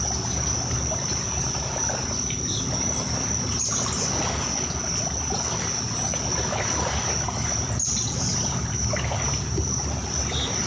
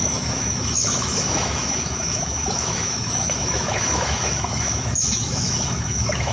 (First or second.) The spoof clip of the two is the second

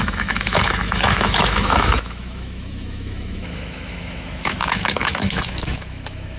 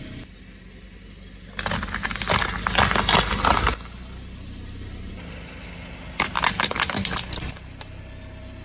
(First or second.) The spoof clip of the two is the first